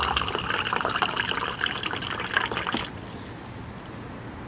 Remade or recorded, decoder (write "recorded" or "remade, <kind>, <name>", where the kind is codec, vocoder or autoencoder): recorded